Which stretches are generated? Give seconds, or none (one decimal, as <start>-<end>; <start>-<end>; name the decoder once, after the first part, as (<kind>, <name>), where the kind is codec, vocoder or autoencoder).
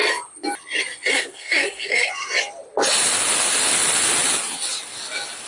1.1-2.1 (codec, SNAC)